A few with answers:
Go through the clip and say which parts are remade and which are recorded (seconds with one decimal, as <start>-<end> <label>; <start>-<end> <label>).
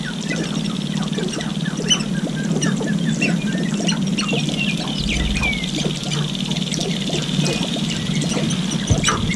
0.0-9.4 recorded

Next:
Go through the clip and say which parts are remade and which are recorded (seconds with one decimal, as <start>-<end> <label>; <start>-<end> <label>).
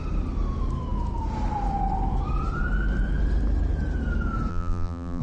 0.0-4.5 recorded; 4.5-5.2 remade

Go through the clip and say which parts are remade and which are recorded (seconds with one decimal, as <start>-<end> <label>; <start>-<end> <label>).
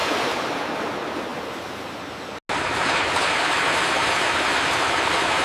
0.0-5.4 recorded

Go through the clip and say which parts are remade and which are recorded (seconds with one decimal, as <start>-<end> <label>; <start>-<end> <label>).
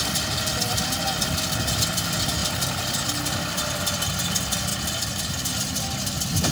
0.0-0.5 recorded; 0.5-1.0 remade; 1.0-4.7 recorded; 4.7-5.3 remade; 5.3-6.5 recorded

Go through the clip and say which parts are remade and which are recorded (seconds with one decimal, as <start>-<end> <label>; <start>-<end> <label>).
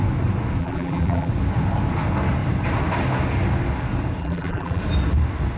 0.0-0.6 recorded; 0.6-1.3 remade; 1.3-4.2 recorded; 4.2-4.8 remade; 4.8-5.6 recorded